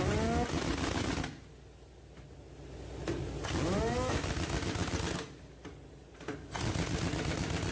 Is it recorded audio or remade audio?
recorded